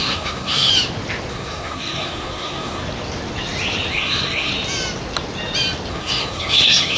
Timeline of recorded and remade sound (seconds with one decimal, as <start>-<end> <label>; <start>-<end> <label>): 0.0-0.7 remade; 0.7-1.3 recorded; 1.3-2.8 remade; 2.8-3.9 recorded; 3.9-4.5 remade; 4.5-5.9 recorded; 5.9-7.0 remade